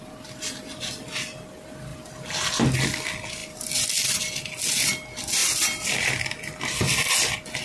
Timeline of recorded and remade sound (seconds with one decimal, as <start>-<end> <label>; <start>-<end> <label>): 0.0-7.6 recorded